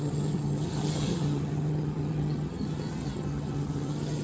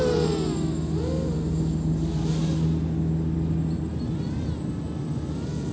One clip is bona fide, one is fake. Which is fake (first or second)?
first